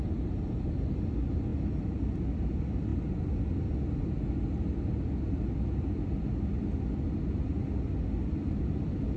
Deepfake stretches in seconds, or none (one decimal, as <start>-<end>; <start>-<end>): none